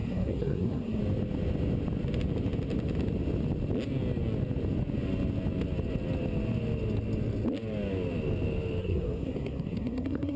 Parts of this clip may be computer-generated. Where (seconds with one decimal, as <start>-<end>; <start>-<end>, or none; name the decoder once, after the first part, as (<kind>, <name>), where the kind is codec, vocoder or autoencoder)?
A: 0.0-1.0 (codec, SNAC); 8.8-10.4